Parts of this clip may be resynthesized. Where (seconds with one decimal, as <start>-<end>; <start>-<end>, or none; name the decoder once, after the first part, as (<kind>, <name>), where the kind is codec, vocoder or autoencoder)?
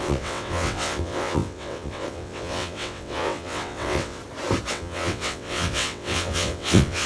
0.0-4.2 (vocoder, WaveNeXt); 4.7-7.1